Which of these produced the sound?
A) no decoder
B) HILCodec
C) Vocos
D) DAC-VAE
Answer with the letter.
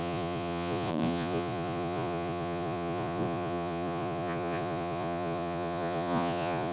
C